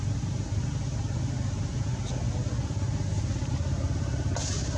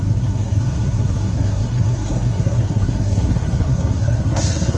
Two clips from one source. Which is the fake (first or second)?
second